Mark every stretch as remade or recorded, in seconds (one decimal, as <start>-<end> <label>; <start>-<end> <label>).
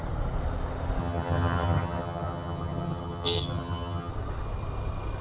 0.0-1.0 recorded; 1.0-4.1 remade; 4.1-5.2 recorded